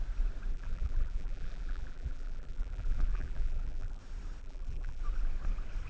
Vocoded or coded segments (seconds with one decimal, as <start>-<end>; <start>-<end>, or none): 0.5-4.0; 4.4-5.0